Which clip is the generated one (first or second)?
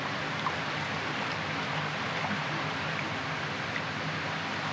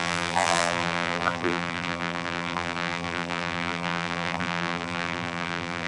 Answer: second